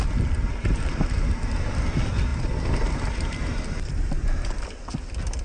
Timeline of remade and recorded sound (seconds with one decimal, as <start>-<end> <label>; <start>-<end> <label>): 0.0-2.3 recorded; 2.3-4.8 remade; 4.8-5.4 recorded